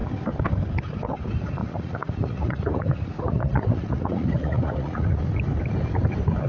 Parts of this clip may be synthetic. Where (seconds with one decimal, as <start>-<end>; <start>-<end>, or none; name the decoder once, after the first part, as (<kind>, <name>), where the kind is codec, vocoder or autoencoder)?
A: 1.6-5.2 (vocoder, Vocos)

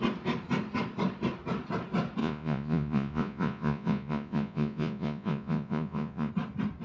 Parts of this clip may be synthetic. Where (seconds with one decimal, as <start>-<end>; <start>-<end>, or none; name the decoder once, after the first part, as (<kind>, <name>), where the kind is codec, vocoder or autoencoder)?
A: 2.2-6.3 (vocoder, Vocos)

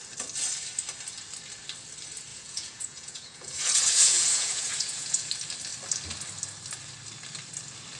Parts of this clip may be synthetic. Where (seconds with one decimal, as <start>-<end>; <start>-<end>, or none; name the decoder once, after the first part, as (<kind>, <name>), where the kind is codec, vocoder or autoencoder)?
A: 2.3-5.3 (vocoder, Vocos)

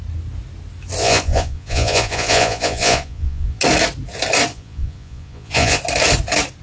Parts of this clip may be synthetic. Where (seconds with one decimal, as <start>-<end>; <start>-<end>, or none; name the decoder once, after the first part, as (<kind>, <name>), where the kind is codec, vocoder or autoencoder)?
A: 1.0-3.6 (vocoder, Vocos); 4.5-5.8

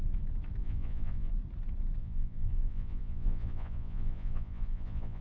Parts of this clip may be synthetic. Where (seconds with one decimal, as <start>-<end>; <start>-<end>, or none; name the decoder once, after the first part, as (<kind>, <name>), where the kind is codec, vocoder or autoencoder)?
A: 0.6-1.3 (vocoder, Vocos); 2.0-5.2

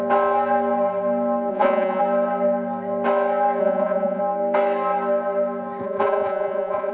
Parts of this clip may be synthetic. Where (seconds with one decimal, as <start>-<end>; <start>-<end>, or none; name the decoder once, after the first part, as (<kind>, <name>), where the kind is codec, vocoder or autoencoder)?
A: 1.5-2.0 (vocoder, Vocos); 3.6-4.2; 5.8-6.9

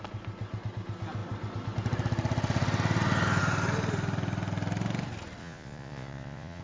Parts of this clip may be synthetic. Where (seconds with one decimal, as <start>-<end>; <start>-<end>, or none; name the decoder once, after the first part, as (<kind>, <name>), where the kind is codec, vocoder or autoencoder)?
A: 5.4-6.6 (vocoder, Vocos)